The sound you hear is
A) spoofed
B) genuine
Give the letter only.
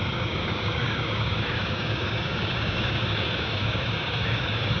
A